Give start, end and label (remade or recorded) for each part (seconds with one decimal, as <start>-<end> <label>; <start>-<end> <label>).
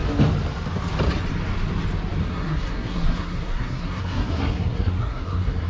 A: 0.0-2.2 recorded; 2.2-5.7 remade